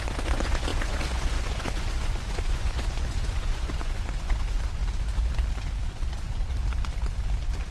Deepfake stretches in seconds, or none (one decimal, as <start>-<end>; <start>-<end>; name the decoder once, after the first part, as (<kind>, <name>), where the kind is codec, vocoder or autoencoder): 0.0-4.8 (vocoder, Vocos); 5.8-6.5